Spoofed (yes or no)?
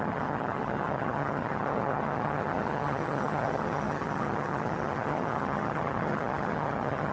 yes